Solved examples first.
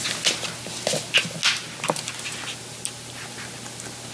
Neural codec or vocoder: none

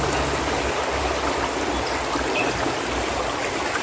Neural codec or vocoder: none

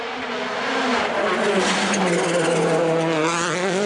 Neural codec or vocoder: none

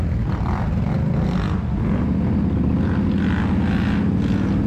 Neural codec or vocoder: none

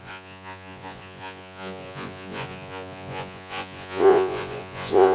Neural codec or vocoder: vocoder, Vocos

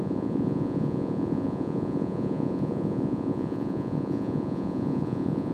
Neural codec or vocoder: vocoder, Vocos